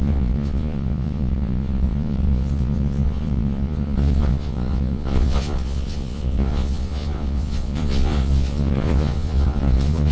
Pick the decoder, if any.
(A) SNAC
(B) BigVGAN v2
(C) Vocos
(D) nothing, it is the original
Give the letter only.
C